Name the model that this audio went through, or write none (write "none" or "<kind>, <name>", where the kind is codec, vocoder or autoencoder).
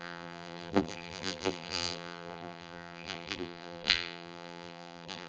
vocoder, BigVGAN v2